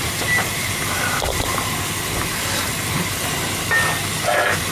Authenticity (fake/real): real